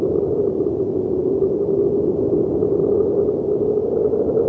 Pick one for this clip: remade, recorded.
recorded